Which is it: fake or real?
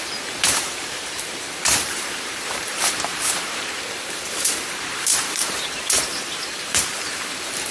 fake